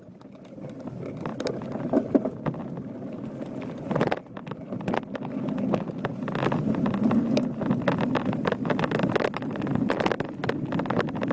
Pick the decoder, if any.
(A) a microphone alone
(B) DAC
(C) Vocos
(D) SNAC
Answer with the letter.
A